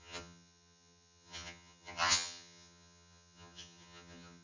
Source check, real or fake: fake